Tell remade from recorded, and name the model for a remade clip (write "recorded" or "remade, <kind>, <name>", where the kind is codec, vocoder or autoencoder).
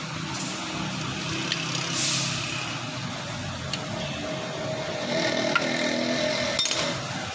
recorded